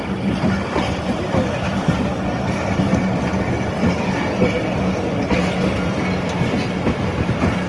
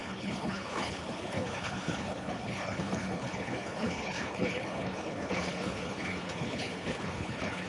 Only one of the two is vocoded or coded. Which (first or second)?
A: second